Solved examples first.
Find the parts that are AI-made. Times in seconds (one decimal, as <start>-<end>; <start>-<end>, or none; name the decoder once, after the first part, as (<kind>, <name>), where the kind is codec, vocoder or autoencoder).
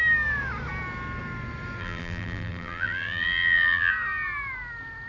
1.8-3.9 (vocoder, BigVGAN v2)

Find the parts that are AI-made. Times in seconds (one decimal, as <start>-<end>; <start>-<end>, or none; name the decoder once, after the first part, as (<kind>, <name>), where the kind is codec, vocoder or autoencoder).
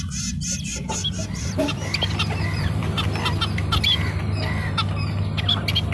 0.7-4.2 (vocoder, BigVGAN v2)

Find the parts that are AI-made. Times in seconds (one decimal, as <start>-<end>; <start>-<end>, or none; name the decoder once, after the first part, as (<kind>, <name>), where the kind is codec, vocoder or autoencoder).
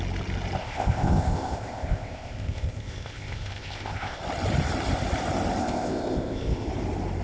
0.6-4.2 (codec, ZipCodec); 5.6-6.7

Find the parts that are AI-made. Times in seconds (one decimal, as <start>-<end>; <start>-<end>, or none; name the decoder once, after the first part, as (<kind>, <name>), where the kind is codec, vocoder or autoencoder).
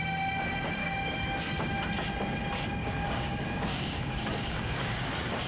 0.8-1.8 (codec, DAC); 2.8-5.1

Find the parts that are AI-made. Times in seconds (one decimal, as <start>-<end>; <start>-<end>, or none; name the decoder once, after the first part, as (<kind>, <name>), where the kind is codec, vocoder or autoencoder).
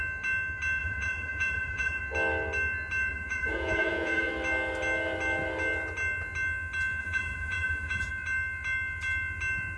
0.8-2.0 (vocoder, Vocos); 3.1-4.3; 7.0-8.1